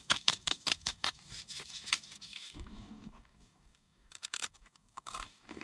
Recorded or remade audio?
remade